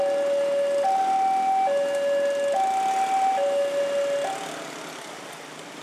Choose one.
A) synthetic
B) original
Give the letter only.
B